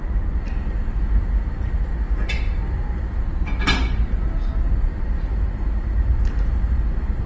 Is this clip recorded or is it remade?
recorded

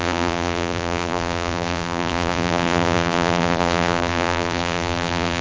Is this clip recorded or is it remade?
remade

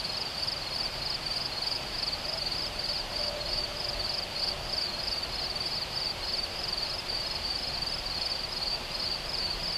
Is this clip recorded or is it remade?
remade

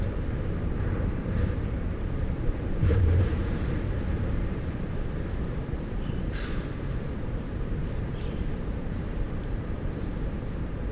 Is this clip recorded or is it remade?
remade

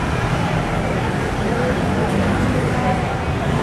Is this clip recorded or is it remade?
remade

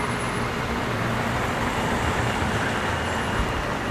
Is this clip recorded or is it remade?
remade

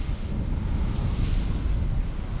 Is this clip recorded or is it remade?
recorded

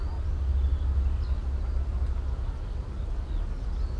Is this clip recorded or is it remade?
recorded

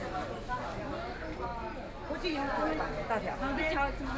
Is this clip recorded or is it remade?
recorded